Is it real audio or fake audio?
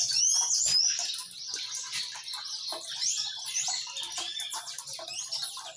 real